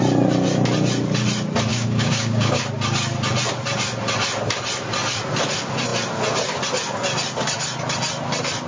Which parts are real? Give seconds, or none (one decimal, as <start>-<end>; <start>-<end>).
0.0-1.7; 2.6-8.7